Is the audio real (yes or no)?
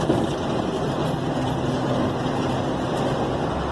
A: yes